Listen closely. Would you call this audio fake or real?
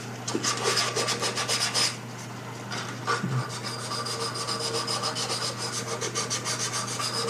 real